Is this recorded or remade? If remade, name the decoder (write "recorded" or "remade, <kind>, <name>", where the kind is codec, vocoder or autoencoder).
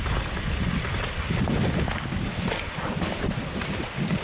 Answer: recorded